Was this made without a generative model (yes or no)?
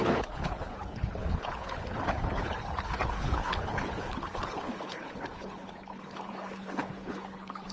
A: no